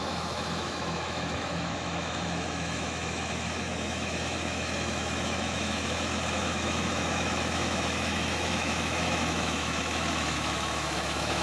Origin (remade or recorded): remade